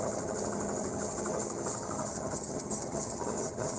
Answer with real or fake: fake